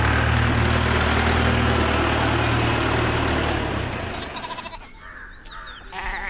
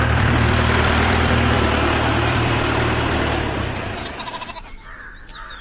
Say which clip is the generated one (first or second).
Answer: second